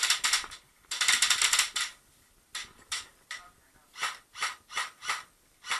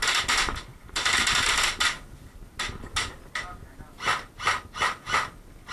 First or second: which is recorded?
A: second